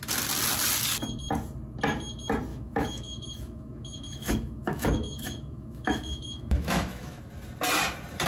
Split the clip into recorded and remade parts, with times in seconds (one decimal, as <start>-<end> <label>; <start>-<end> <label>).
0.0-2.5 recorded; 2.5-7.2 remade; 7.2-8.3 recorded